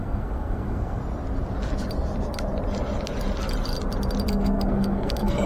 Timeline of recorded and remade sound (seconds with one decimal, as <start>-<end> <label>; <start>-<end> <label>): 0.0-1.0 remade; 1.0-4.3 recorded; 4.3-5.5 remade